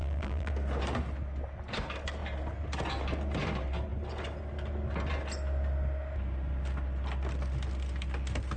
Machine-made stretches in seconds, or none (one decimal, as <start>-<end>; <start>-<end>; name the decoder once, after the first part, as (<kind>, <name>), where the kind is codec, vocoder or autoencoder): 0.0-0.5 (vocoder, BigVGAN v2)